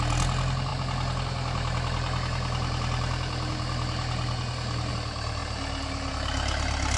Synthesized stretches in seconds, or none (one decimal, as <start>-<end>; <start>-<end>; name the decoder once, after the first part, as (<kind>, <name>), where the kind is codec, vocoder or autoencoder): none